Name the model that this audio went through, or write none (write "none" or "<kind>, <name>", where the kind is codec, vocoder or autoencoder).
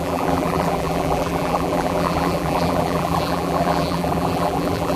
vocoder, BigVGAN v2